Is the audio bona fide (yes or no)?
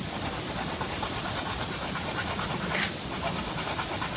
yes